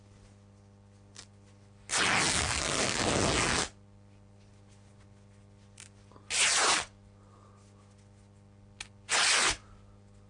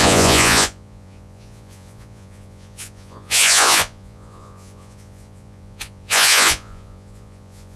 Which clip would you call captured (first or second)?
first